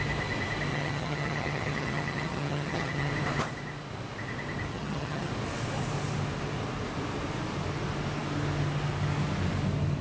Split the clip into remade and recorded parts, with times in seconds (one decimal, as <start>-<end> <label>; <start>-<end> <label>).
0.0-0.7 recorded; 0.7-3.1 remade; 3.1-4.7 recorded; 4.7-5.3 remade; 5.3-10.0 recorded